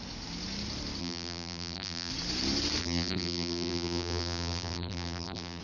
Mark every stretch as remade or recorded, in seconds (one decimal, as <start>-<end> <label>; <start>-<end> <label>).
0.0-1.0 recorded; 1.0-2.1 remade; 2.1-2.8 recorded; 2.8-5.6 remade